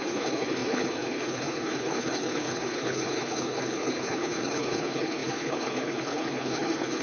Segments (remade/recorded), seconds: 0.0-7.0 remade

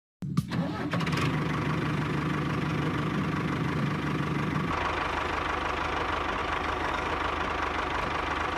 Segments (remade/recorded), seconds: 0.0-6.4 recorded; 6.4-7.1 remade; 7.1-8.6 recorded

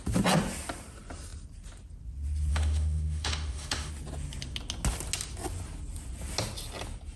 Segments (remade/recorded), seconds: 0.0-2.5 recorded; 2.5-3.9 remade; 3.9-7.2 recorded